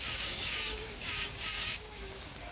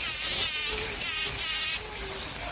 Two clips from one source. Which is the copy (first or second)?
first